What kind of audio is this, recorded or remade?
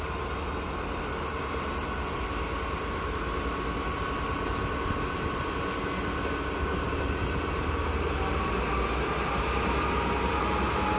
recorded